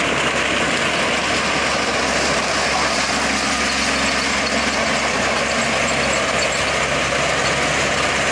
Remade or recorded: recorded